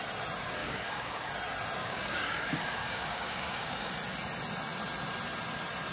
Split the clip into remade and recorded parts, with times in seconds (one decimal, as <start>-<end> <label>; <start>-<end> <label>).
0.0-0.6 recorded; 0.6-1.3 remade; 1.3-1.8 recorded; 1.8-3.9 remade; 3.9-5.9 recorded